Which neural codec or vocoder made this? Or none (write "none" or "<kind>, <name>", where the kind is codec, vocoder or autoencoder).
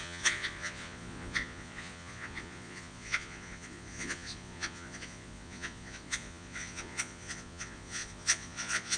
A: vocoder, Vocos